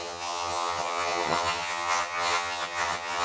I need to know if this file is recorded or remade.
remade